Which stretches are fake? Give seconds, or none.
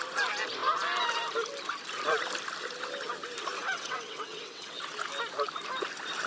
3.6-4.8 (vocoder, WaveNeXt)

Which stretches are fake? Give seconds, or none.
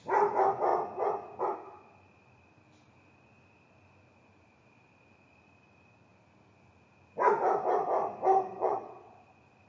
8.5-9.1 (vocoder, WaveNeXt)